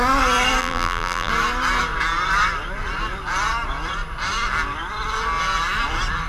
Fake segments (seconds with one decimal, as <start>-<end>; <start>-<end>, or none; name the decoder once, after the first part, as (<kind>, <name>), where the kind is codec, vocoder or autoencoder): 0.6-1.3 (vocoder, BigVGAN v2)